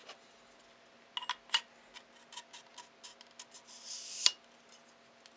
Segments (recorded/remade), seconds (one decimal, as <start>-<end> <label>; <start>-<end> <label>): 0.0-5.4 recorded